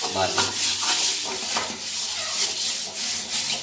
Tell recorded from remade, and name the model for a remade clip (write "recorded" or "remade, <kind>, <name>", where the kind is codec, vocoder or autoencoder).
recorded